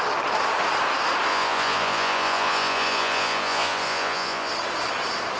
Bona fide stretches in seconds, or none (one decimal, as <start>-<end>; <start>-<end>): 0.0-1.3; 4.5-5.4